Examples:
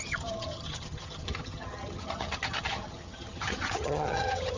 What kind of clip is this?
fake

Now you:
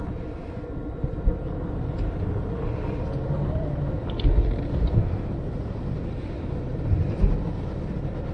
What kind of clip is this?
real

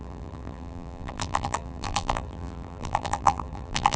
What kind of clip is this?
fake